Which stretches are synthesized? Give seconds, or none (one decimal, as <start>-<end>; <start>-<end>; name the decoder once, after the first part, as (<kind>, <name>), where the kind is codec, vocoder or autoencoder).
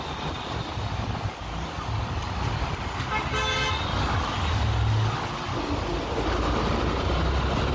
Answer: none